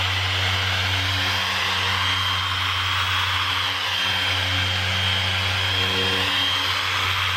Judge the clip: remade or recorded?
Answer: recorded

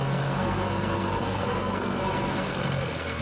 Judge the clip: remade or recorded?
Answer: remade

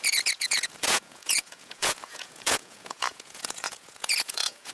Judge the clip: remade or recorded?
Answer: remade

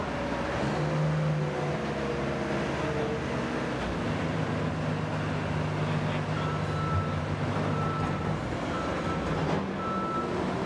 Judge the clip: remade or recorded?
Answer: recorded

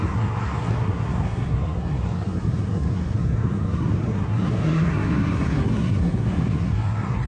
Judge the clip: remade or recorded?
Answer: remade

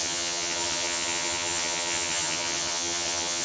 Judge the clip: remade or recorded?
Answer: remade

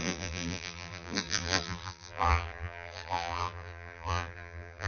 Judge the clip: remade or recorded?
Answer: remade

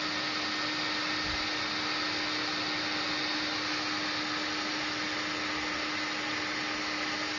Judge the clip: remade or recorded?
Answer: recorded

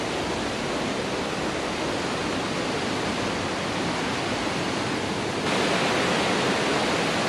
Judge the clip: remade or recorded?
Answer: recorded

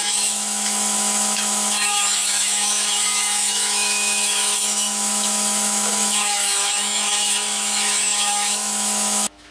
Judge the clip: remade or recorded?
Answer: remade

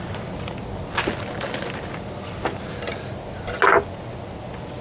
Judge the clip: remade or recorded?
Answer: recorded